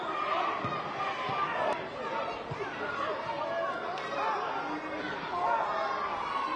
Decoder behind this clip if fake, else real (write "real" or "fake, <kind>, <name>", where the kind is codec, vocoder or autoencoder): real